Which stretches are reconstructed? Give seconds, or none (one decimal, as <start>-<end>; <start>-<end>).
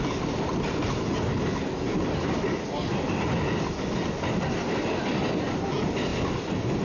none